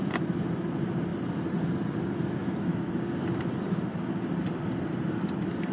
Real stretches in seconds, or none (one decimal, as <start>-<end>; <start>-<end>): 0.0-2.4; 2.9-5.7